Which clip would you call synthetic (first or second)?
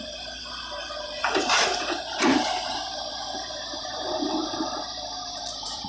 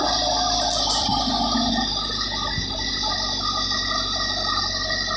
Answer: first